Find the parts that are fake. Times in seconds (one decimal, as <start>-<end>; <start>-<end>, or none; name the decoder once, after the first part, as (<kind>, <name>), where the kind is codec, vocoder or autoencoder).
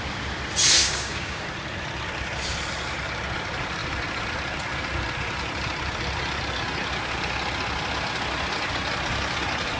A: 0.8-1.4 (codec, DAC)